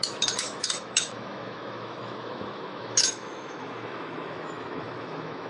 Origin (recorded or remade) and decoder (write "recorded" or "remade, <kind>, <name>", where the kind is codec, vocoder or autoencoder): remade, autoencoder, DAC-VAE